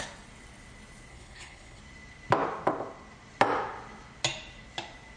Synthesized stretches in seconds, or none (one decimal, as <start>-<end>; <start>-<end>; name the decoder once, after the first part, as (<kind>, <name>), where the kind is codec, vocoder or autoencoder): 1.1-1.8 (codec, HILCodec)